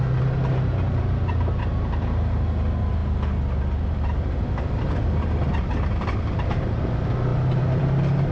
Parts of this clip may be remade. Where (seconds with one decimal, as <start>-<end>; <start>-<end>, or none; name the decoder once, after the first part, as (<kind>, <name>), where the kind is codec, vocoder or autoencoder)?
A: none